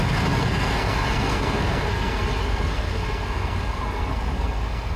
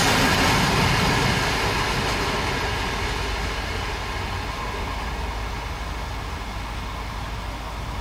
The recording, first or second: second